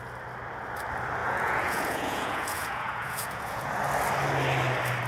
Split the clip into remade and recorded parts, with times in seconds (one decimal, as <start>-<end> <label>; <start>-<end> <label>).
0.0-1.2 recorded; 1.2-3.7 remade; 3.7-5.1 recorded